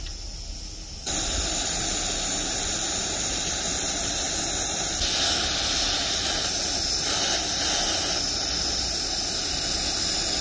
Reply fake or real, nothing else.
real